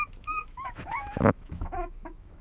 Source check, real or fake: fake